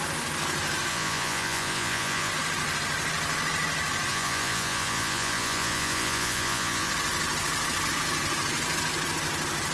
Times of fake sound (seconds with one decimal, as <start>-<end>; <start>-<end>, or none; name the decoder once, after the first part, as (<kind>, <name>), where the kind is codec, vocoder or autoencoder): 0.9-2.3 (vocoder, Vocos); 4.1-6.9